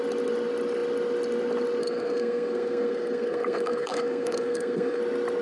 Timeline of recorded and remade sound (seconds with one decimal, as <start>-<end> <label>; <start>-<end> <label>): 0.0-1.8 recorded; 1.8-5.0 remade; 5.0-5.4 recorded